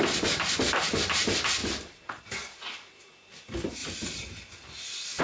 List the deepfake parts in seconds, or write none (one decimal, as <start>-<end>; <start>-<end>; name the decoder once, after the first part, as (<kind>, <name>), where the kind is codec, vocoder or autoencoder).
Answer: 1.6-2.2 (vocoder, BigVGAN v2)